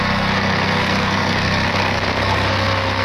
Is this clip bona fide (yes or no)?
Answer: no